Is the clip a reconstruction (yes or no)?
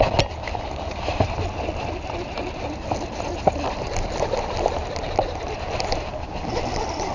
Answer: no